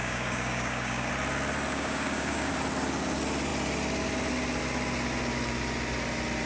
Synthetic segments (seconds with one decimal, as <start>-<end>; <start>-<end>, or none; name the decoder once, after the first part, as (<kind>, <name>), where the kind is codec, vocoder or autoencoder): 0.0-1.1 (codec, DAC); 1.7-2.5